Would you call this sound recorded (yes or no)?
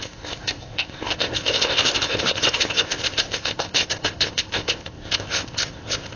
no